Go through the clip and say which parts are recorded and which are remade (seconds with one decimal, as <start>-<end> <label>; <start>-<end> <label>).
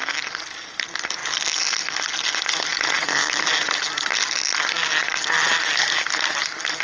0.0-6.8 recorded